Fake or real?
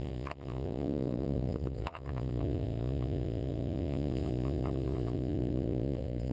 fake